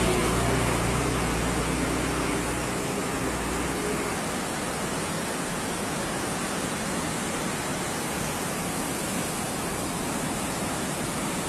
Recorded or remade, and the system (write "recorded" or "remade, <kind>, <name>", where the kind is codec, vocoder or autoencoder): recorded